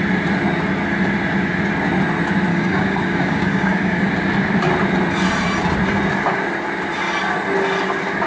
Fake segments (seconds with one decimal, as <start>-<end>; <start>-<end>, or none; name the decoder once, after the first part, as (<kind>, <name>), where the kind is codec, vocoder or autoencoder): 2.5-4.1 (codec, DAC)